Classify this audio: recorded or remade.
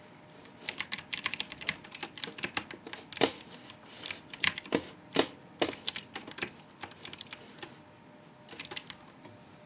recorded